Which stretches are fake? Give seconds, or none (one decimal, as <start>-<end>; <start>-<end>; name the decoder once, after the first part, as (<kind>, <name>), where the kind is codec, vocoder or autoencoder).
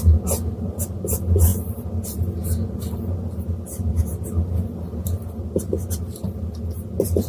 none